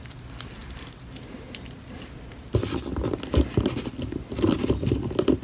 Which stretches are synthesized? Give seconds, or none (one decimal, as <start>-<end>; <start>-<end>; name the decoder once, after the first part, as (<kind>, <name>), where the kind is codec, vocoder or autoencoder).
none